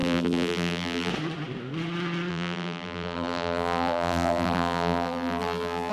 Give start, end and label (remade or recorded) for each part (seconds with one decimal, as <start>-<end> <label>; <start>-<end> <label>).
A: 0.0-1.1 remade; 1.1-2.3 recorded; 2.3-5.9 remade